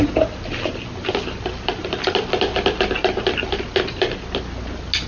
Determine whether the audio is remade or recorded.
recorded